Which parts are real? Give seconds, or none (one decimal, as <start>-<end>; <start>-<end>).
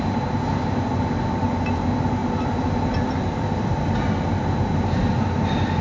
0.0-2.2; 5.1-5.8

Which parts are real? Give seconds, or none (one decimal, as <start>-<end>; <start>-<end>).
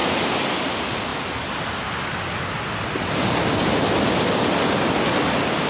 0.0-5.7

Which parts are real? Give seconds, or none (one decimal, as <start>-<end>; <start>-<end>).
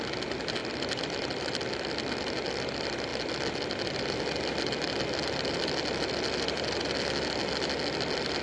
0.0-0.6; 1.5-8.4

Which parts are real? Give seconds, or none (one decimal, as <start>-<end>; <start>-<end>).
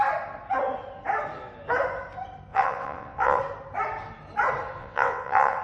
0.0-2.5; 3.4-4.8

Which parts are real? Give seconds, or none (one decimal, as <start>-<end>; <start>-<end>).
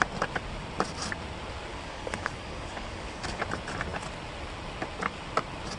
0.0-1.7; 3.4-5.8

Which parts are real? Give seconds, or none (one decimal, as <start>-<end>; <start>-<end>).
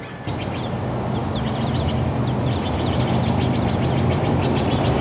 0.0-5.0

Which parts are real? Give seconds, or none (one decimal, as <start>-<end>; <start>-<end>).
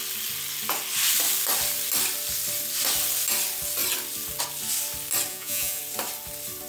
0.0-5.3; 5.8-6.7